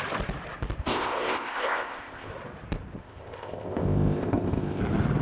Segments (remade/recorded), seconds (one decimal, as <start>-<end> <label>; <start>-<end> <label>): 0.0-0.8 recorded; 0.8-2.3 remade; 2.3-3.0 recorded; 3.0-4.8 remade; 4.8-5.2 recorded